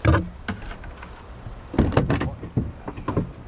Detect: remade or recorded recorded